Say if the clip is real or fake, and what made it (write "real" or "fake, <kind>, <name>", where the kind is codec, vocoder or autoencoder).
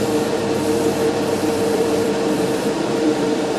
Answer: fake, vocoder, BigVGAN v2